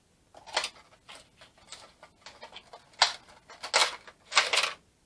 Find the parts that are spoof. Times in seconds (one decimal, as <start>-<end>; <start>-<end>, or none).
none